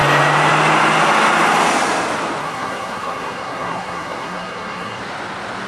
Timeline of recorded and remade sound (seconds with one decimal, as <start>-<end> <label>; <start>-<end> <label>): 0.0-2.4 recorded; 2.4-5.0 remade; 5.0-5.7 recorded